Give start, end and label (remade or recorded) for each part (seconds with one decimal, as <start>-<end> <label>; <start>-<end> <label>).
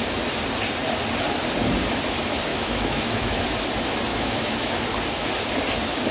0.0-2.5 recorded; 2.5-3.4 remade; 3.4-4.1 recorded; 4.1-4.7 remade; 4.7-6.1 recorded